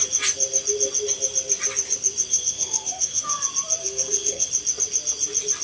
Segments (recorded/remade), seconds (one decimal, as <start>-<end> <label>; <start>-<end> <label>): 0.0-2.3 recorded; 2.3-3.4 remade; 3.4-3.8 recorded; 3.8-4.5 remade; 4.5-5.6 recorded